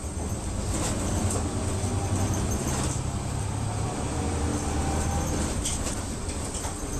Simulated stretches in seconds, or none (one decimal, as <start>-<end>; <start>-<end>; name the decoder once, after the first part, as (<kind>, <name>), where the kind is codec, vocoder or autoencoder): none